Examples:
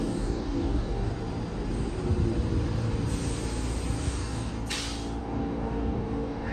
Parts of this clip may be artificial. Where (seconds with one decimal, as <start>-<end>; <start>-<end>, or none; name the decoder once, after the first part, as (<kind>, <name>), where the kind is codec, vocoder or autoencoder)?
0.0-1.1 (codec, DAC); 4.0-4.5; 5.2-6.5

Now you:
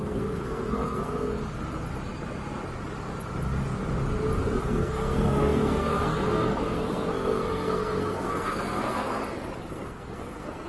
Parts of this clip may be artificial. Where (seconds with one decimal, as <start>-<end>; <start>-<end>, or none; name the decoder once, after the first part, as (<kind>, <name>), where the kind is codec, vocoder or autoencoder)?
0.0-1.4 (codec, SNAC); 4.6-9.2; 9.7-10.7

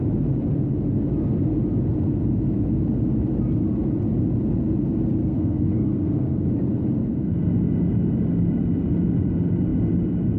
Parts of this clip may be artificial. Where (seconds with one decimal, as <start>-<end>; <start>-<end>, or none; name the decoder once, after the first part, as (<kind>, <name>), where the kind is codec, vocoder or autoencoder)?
5.2-6.5 (codec, SNAC)

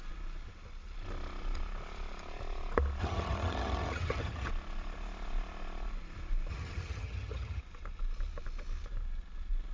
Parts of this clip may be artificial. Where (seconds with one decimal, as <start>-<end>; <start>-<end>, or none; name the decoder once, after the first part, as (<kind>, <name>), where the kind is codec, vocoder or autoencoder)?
3.0-4.5 (vocoder, HiFi-GAN); 6.5-7.6

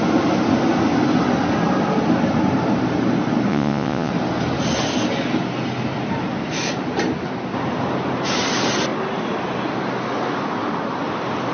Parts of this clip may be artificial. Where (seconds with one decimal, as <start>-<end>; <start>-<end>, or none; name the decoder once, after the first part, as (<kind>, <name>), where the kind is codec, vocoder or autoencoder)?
3.5-4.1 (vocoder, Vocos)